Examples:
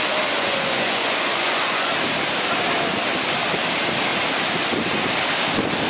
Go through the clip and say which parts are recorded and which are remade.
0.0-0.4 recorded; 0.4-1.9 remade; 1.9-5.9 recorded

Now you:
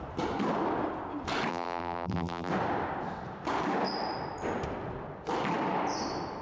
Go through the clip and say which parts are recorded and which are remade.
0.0-1.5 recorded; 1.5-2.5 remade; 2.5-6.4 recorded

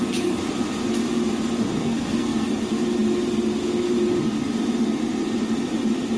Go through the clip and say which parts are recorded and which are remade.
0.0-1.8 recorded; 1.8-2.5 remade; 2.5-6.2 recorded

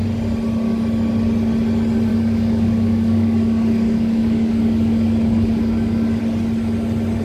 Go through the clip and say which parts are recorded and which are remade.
0.0-2.1 recorded; 2.1-6.2 remade; 6.2-7.2 recorded